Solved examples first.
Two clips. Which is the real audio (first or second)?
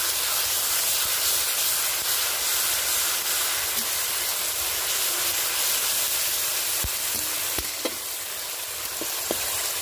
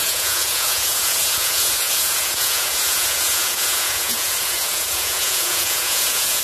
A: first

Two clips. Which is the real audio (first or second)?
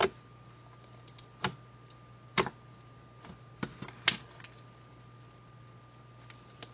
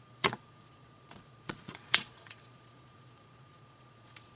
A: first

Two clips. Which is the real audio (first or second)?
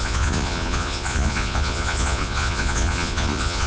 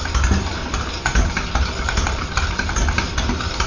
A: second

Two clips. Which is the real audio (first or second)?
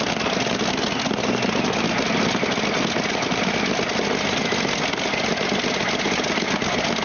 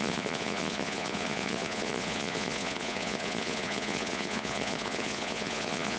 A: first